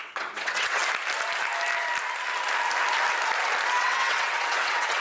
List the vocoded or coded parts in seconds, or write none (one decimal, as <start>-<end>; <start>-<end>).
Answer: 0.0-0.8; 3.8-5.0